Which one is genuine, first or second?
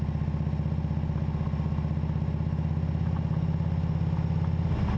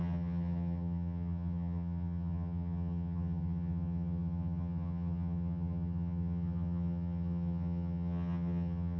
first